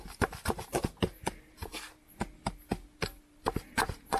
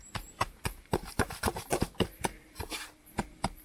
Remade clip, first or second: second